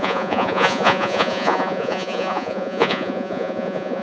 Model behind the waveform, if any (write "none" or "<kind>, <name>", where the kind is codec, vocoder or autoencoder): vocoder, Vocos